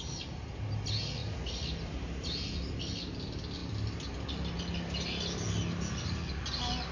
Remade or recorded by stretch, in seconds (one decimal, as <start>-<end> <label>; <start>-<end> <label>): 0.0-6.9 recorded